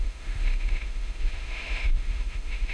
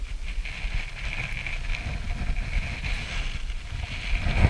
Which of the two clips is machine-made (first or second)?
first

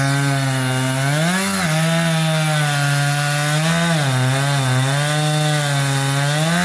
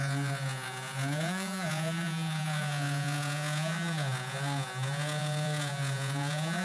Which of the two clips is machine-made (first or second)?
second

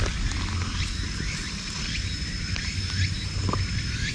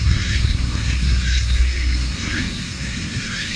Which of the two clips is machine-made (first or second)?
second